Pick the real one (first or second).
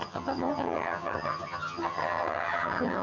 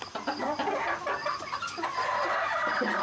second